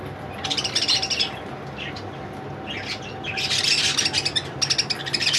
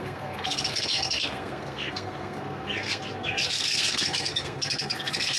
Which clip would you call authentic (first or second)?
first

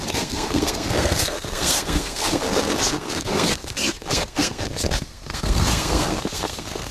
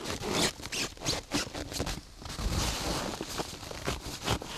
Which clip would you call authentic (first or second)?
second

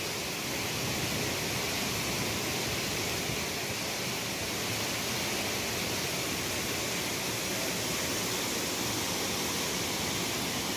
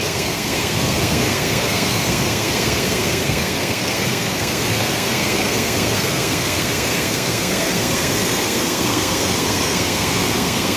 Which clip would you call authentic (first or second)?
first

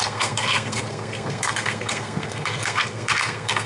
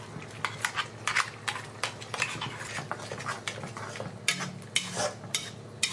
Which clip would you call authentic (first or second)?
second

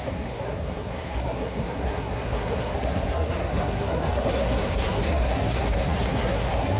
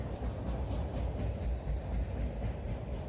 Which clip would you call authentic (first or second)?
second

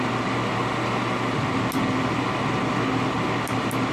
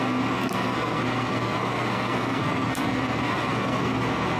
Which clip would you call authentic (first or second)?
first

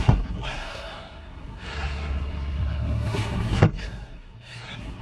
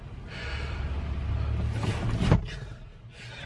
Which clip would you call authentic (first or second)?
second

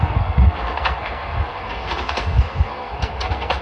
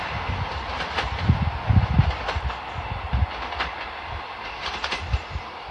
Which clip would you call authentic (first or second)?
second